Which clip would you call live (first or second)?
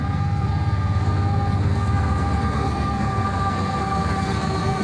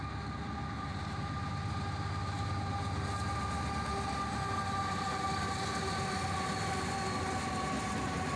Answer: second